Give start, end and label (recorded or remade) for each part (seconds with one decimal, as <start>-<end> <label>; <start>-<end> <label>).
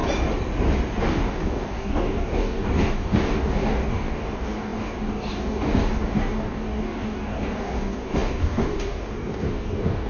0.0-1.0 recorded; 1.0-10.1 remade